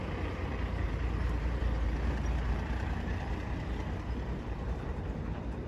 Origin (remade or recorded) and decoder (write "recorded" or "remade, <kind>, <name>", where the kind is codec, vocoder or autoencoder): remade, vocoder, BigVGAN v2